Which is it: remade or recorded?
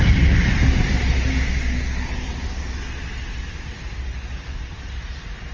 recorded